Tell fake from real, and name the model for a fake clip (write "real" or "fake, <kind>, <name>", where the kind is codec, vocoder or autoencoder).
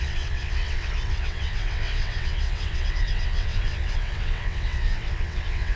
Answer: fake, vocoder, WaveNeXt